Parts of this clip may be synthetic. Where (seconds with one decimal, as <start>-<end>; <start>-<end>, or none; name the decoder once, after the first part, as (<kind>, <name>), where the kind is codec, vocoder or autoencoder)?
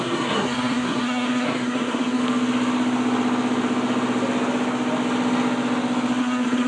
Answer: 0.0-2.2 (codec, SNAC); 6.2-6.7